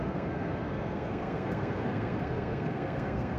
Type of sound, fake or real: fake